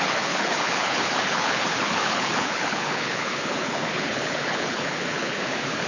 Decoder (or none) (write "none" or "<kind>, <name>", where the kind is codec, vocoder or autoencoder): codec, HILCodec